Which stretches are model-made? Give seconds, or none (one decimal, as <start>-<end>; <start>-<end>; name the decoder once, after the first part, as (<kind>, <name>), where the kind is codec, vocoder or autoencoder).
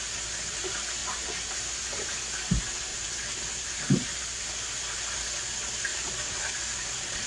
1.0-2.1 (vocoder, BigVGAN v2); 2.9-4.5; 5.9-7.3